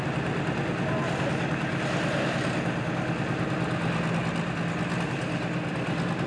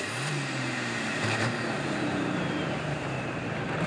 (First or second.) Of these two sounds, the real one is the first